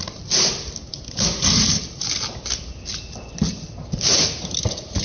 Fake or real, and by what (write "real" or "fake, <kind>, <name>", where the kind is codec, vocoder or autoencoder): real